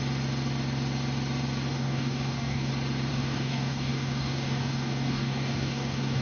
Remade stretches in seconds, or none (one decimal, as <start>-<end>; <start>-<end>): 1.7-2.7; 3.1-6.2